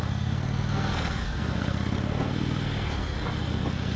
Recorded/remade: remade